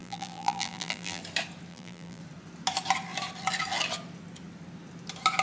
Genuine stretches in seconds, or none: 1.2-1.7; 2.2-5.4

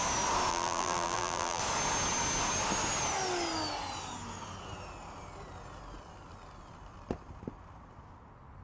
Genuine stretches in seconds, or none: 0.0-0.5; 1.6-8.6

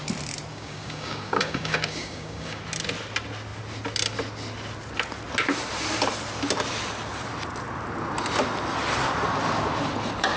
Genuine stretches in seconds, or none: 0.0-0.5; 2.6-10.4

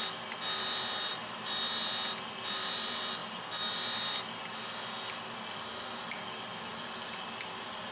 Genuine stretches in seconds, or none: 0.0-7.9

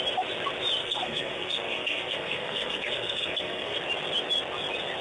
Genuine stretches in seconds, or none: 0.0-0.8; 3.8-5.0

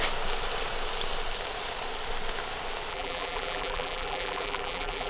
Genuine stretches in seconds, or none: 0.0-2.9